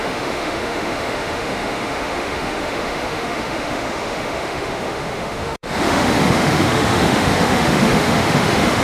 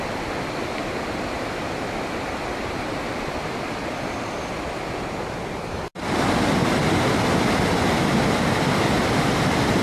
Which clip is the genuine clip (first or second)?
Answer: second